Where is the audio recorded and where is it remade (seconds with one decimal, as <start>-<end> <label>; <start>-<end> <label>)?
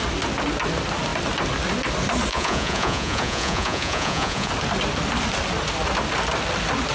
0.0-2.3 recorded; 2.3-4.5 remade; 4.5-6.9 recorded